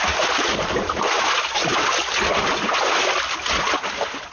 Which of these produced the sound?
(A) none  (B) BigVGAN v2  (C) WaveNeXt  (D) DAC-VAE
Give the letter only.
A